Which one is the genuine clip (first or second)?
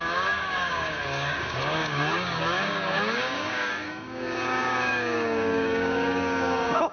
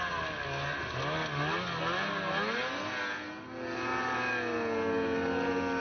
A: second